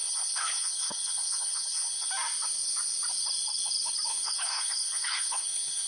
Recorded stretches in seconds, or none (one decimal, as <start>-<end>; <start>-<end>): 2.1-4.1